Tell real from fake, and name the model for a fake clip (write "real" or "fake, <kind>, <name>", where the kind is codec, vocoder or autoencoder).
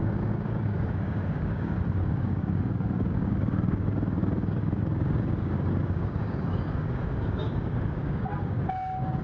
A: fake, codec, DAC